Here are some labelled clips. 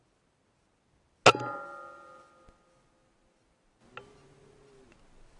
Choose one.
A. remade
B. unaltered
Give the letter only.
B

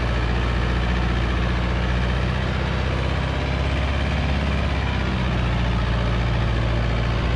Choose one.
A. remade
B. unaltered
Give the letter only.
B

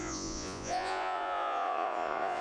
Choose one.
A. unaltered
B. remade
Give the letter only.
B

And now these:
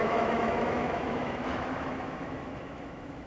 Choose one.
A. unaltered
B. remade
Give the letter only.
B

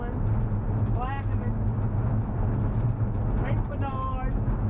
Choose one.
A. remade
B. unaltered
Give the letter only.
B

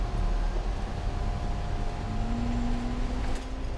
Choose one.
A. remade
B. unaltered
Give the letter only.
B